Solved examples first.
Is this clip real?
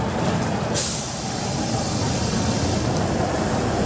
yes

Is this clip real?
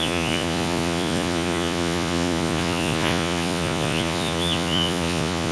no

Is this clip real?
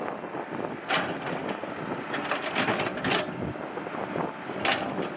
yes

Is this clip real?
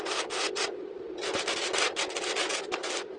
yes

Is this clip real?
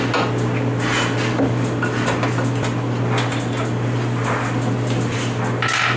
yes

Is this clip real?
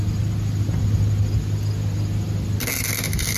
yes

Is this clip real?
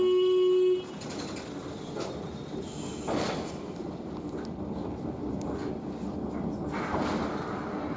yes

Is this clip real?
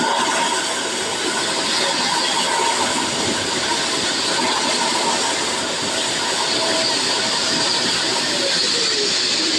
yes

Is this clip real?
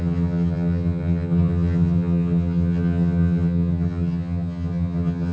no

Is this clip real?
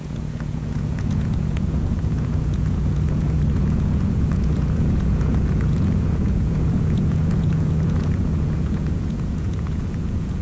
no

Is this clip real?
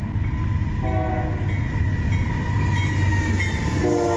yes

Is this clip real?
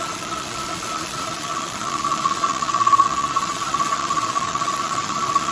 no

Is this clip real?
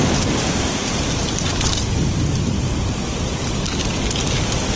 yes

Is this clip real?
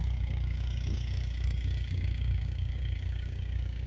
no